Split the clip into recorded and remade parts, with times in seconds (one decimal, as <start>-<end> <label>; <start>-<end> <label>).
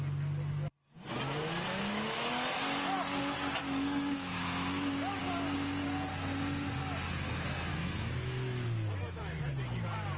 0.0-1.7 recorded; 1.7-2.3 remade; 2.3-3.6 recorded; 3.6-5.2 remade; 5.2-7.7 recorded; 7.7-9.2 remade; 9.2-10.2 recorded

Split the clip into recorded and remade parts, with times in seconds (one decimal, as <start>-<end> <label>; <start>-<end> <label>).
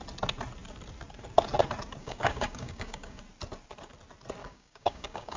0.0-2.0 recorded; 2.0-3.2 remade; 3.2-4.4 recorded; 4.4-5.4 remade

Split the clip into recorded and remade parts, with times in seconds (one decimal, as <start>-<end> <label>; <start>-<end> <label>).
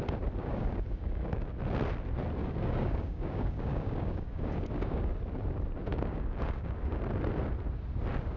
0.0-0.4 recorded; 0.4-1.5 remade; 1.5-2.4 recorded; 2.4-5.1 remade; 5.1-5.9 recorded; 5.9-7.0 remade; 7.0-8.4 recorded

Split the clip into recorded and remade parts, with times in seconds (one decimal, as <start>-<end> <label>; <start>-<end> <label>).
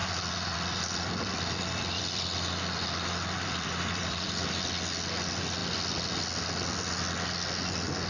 0.0-4.5 remade; 4.5-8.1 recorded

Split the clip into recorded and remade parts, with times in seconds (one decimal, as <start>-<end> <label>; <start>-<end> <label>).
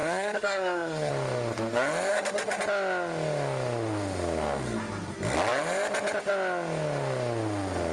0.0-1.1 remade; 1.1-2.1 recorded; 2.1-2.6 remade; 2.6-7.9 recorded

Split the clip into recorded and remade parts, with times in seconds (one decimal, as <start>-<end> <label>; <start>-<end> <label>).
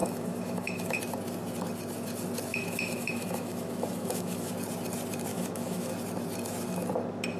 0.0-1.0 remade; 1.0-2.5 recorded; 2.5-4.5 remade; 4.5-5.3 recorded; 5.3-5.9 remade; 5.9-7.4 recorded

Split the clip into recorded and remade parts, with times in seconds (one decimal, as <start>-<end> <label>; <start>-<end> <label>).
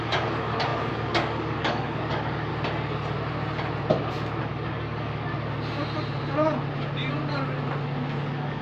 0.0-2.5 remade; 2.5-4.4 recorded; 4.4-5.3 remade; 5.3-8.2 recorded; 8.2-8.6 remade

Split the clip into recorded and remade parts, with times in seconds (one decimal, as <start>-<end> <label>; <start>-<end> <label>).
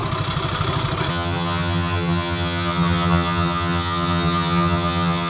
0.0-1.1 recorded; 1.1-5.3 remade